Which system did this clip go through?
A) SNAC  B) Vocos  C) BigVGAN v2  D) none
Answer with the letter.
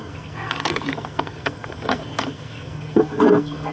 A